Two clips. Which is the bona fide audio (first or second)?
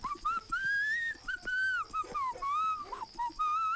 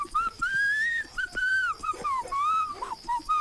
first